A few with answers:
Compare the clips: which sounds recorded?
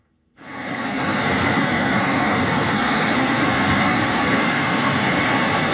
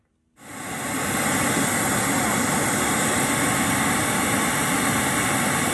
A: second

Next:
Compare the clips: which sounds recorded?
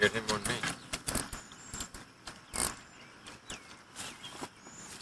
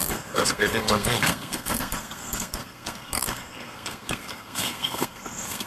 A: first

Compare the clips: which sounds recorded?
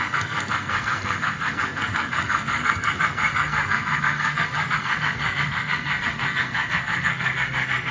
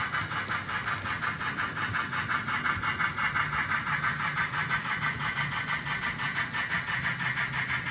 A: second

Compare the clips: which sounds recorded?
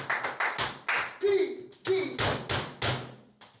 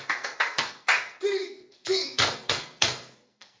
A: first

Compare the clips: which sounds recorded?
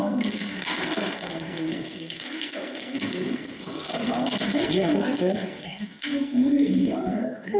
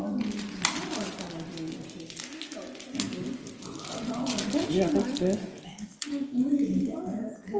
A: second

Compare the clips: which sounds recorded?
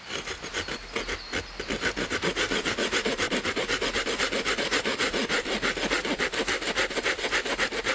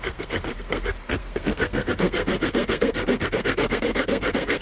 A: first